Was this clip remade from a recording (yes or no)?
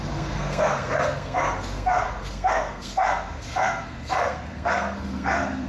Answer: yes